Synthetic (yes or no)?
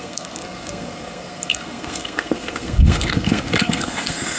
yes